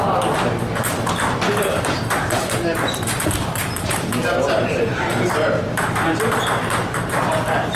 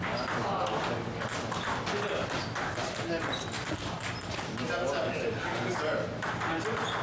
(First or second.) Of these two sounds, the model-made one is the first